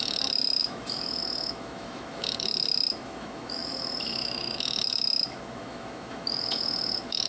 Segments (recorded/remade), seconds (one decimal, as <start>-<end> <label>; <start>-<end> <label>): 0.0-7.3 remade